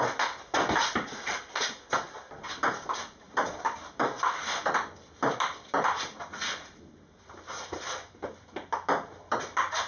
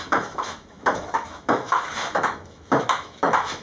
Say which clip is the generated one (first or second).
second